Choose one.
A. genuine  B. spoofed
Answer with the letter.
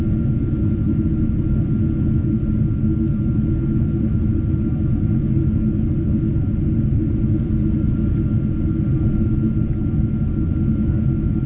A